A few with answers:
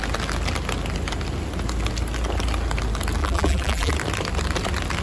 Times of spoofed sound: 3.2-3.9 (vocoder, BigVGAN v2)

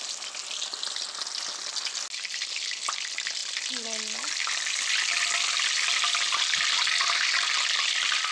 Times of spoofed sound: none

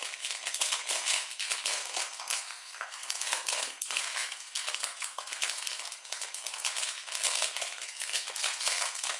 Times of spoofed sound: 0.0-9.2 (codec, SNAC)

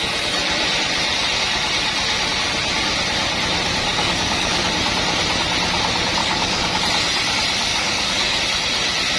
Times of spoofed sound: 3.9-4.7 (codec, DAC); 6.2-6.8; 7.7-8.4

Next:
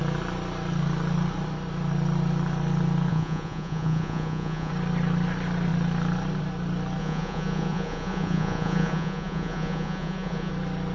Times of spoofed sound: 3.1-4.7 (vocoder, Vocos); 7.0-10.5